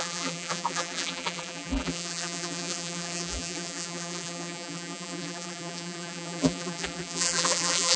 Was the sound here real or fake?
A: fake